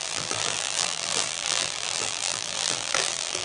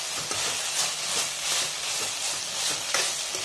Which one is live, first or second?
second